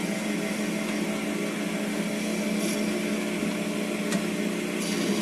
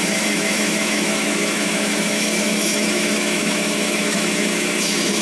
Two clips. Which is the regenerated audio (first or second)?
second